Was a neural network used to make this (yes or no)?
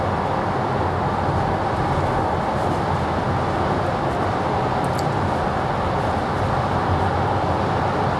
no